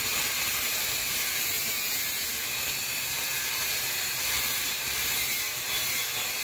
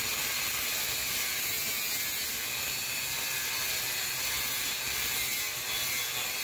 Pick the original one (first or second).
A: second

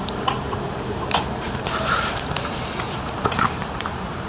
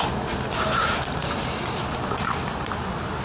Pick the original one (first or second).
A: second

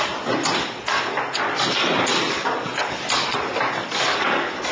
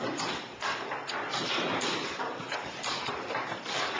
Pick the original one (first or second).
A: first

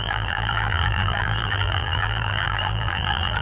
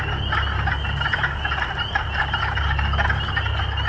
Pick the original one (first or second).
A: second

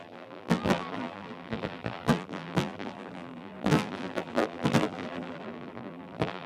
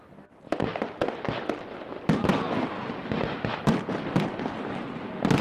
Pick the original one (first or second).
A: second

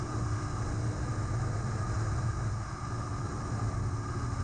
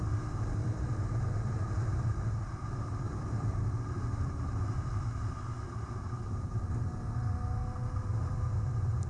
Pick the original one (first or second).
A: first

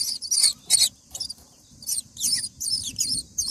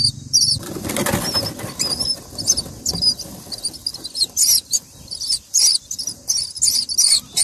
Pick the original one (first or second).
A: second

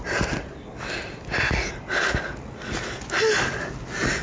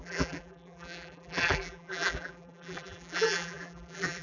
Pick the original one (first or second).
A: first